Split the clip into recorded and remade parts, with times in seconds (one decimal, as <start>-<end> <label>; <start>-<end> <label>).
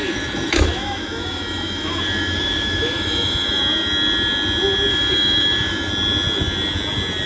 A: 0.0-3.6 remade; 3.6-4.9 recorded; 4.9-5.9 remade; 5.9-7.3 recorded